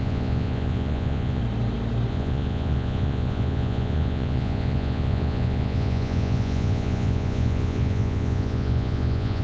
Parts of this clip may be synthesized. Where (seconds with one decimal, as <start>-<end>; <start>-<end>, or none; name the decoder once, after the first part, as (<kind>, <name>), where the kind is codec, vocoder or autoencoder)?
0.0-1.4 (vocoder, Vocos); 2.1-9.4